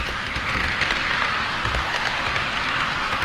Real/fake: real